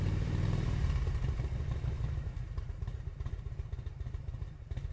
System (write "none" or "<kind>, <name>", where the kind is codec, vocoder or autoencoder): vocoder, BigVGAN v2